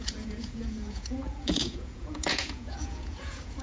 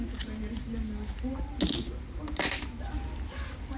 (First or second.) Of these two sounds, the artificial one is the first